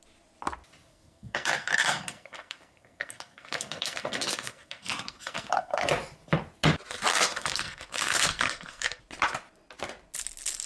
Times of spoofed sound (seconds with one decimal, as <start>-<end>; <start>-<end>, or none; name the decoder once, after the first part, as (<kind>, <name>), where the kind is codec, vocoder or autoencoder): 0.9-5.9 (codec, SNAC); 7.1-9.0